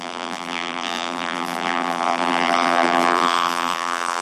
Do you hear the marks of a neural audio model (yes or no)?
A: yes